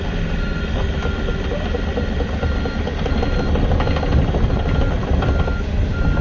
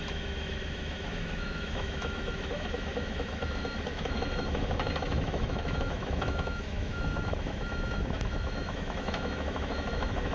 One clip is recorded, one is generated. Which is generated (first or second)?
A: second